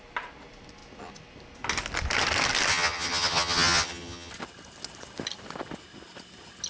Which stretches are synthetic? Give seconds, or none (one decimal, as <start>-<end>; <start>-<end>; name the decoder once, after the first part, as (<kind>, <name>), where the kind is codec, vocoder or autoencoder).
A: 2.7-4.3 (vocoder, HiFi-GAN)